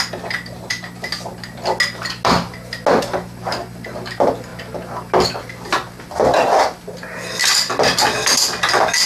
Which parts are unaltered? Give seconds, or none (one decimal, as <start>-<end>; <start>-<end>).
0.0-9.1